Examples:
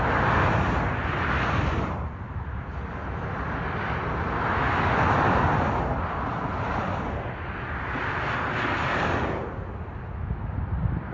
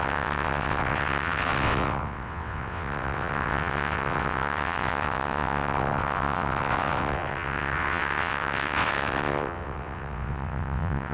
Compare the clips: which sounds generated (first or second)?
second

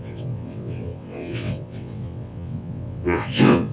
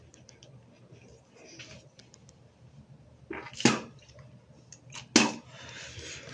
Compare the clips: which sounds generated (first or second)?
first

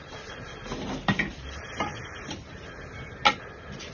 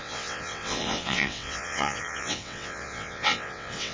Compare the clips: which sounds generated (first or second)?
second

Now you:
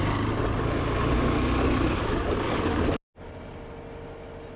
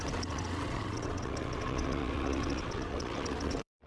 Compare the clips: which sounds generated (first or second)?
second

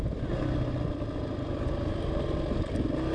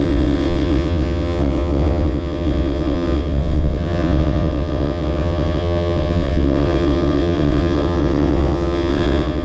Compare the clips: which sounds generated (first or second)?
second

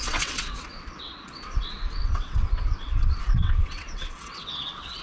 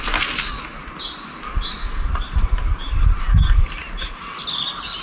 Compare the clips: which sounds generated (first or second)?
first